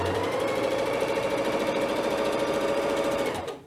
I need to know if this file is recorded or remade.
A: remade